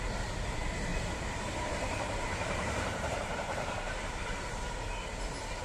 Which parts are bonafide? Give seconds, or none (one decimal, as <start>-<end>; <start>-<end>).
0.0-0.9; 4.0-5.6